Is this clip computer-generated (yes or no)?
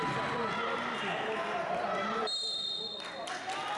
no